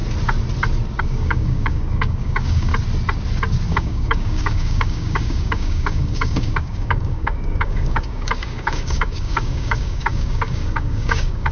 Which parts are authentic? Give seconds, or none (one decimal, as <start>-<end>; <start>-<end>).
0.0-1.0; 2.7-3.7